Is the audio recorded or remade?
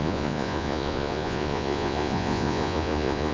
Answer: remade